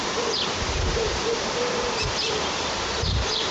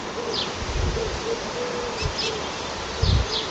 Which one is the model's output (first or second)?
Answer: first